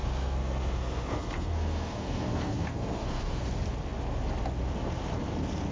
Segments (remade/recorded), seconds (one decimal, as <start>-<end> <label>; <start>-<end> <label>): 0.0-3.4 remade; 3.4-5.7 recorded